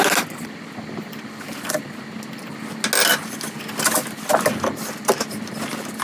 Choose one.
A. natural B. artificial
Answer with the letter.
A